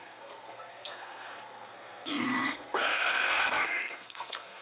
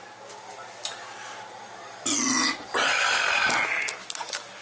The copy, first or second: first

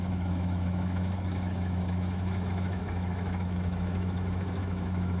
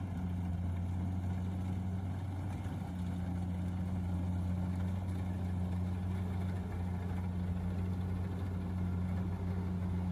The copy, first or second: first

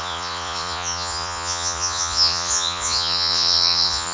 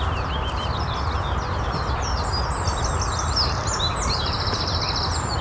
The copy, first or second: first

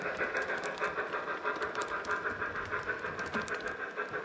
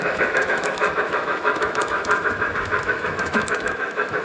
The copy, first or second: second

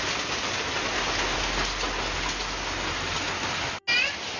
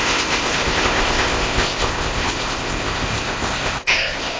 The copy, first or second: second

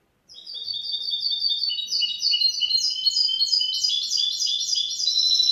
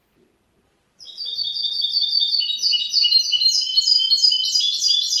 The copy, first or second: second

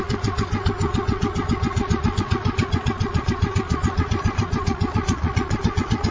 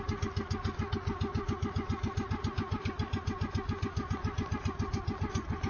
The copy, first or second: first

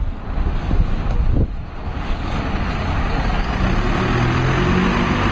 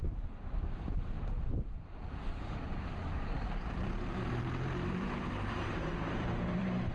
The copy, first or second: second